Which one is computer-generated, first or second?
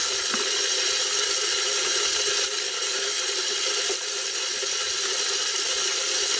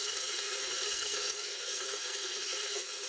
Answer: second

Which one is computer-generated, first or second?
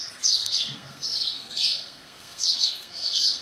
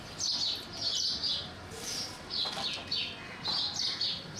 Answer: first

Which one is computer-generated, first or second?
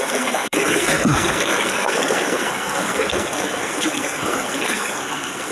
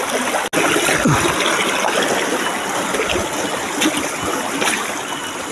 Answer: first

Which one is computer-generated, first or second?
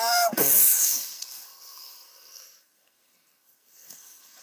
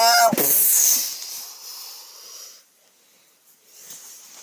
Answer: first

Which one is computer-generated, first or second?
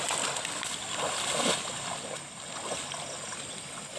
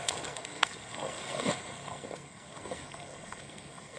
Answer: second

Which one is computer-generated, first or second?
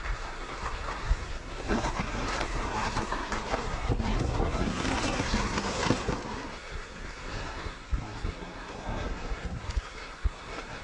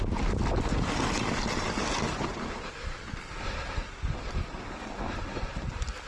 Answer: first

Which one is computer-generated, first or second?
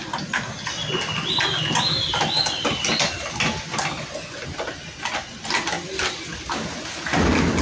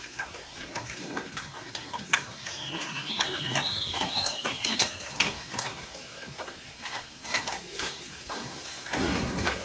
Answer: second